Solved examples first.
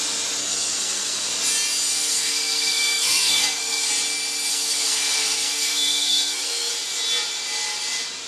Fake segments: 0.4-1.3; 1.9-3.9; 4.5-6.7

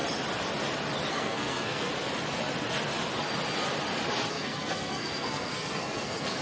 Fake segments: 1.1-1.9; 4.3-6.4